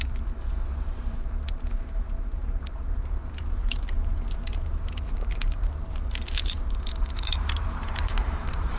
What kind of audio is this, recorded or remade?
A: remade